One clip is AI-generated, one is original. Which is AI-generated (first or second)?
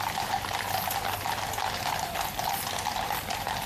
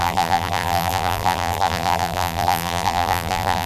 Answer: second